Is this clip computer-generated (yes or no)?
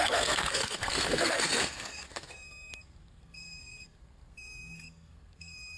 yes